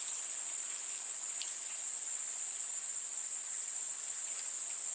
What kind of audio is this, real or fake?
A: real